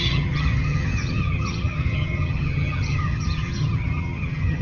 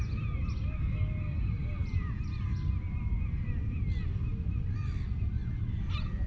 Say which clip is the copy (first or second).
first